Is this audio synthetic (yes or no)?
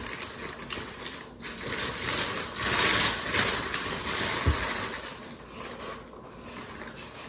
no